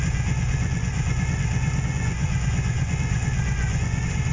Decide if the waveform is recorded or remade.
remade